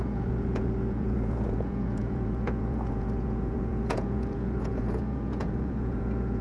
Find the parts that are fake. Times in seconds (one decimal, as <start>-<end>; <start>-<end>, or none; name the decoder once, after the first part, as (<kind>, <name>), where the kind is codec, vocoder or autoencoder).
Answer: 0.0-6.4 (vocoder, Vocos)